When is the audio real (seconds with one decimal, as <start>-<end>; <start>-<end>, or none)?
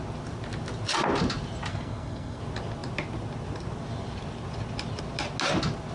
0.0-1.7; 2.4-5.9